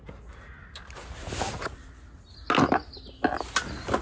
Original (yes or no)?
yes